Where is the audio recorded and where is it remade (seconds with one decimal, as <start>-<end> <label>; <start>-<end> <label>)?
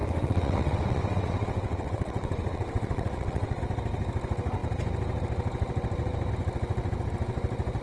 0.0-3.6 remade; 3.6-7.8 recorded